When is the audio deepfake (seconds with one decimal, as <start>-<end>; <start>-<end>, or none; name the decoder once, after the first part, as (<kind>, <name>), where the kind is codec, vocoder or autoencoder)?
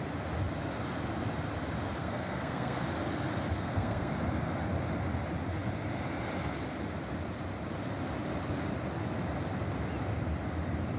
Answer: 2.0-2.8 (codec, SNAC); 3.5-4.1